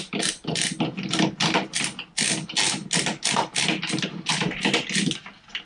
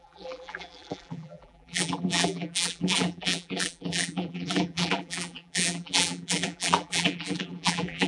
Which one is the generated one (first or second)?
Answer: second